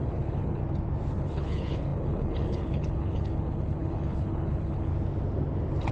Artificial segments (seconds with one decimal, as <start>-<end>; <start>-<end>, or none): 0.0-0.6; 1.1-4.9